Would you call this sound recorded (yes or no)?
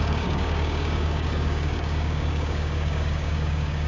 no